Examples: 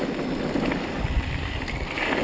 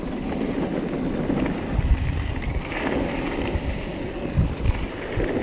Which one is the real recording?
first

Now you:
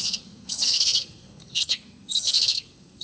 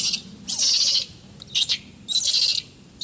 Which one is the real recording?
second